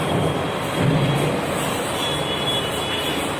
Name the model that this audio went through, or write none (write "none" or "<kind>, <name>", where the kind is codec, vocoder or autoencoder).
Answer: none